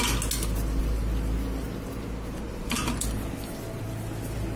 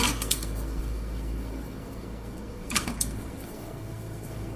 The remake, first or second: second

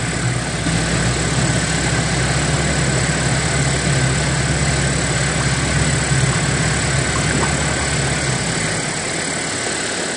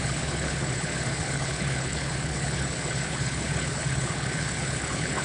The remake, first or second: second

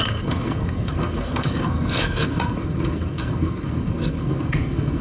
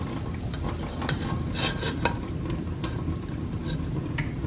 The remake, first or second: first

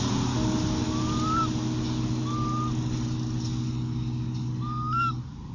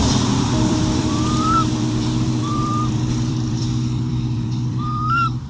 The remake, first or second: second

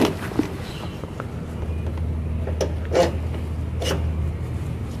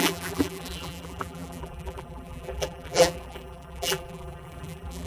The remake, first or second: second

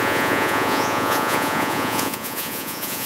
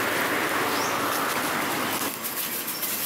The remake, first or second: first